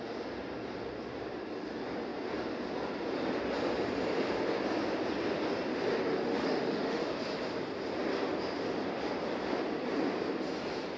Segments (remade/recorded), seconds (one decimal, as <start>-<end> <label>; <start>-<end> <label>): 0.0-6.1 recorded; 6.1-7.0 remade; 7.0-11.0 recorded